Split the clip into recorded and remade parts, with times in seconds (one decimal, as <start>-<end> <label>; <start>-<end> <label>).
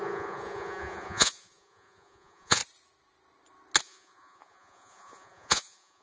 0.0-2.6 remade; 2.6-3.8 recorded; 3.8-6.0 remade